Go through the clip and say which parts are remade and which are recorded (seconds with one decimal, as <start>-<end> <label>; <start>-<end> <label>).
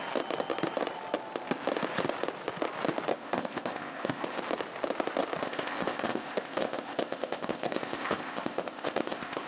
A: 0.0-3.1 recorded; 3.1-4.4 remade; 4.4-5.4 recorded; 5.4-9.5 remade